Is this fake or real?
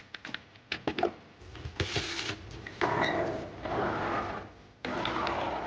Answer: real